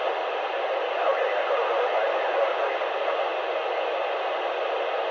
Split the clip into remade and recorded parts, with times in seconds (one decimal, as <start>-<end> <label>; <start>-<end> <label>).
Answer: 0.0-5.1 recorded